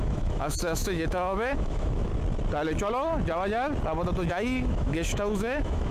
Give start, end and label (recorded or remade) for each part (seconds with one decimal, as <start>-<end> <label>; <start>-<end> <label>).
0.0-2.1 remade; 2.1-4.3 recorded; 4.3-5.9 remade